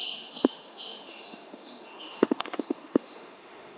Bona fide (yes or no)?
no